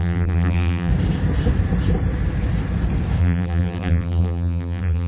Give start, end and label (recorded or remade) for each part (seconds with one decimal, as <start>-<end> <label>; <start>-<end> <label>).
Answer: 0.0-0.9 remade; 0.9-3.2 recorded; 3.2-5.1 remade